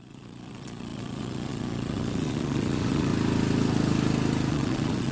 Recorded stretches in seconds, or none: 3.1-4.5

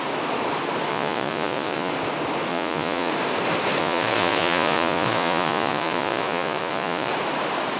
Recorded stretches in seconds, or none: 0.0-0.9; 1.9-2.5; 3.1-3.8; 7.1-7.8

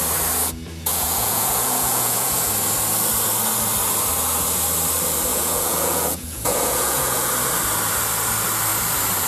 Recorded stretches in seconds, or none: 0.0-0.9; 2.5-5.3; 7.3-9.3

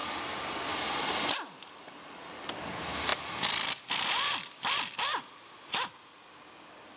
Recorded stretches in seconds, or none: 0.0-7.0